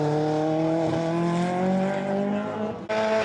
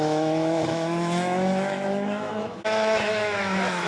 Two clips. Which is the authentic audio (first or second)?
first